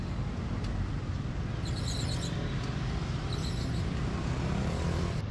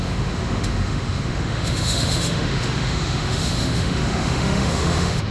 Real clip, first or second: first